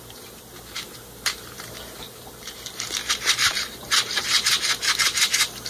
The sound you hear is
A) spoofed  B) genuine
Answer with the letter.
A